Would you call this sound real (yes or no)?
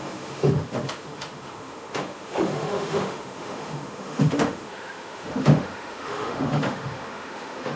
no